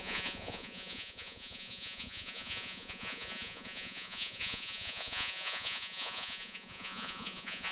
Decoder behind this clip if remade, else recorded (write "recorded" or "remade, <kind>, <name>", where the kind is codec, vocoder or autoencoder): remade, vocoder, Vocos